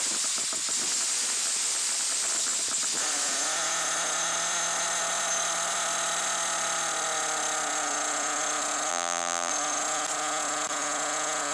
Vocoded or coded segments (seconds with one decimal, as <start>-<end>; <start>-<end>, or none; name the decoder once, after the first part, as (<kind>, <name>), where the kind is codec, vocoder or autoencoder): 8.9-9.5 (vocoder, BigVGAN v2)